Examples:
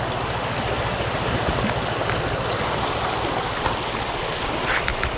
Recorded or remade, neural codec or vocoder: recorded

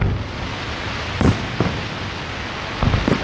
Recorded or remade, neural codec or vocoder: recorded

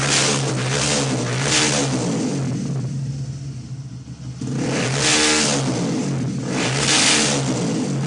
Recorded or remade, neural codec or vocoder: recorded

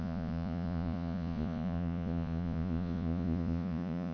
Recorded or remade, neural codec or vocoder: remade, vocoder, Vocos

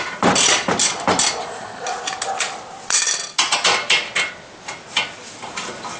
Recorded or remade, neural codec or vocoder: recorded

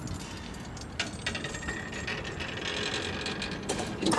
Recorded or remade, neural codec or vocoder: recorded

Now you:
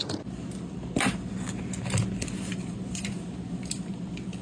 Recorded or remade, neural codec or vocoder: recorded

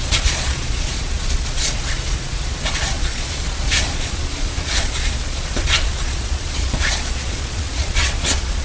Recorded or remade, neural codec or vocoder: remade, vocoder, Vocos